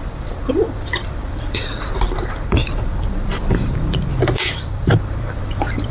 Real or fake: fake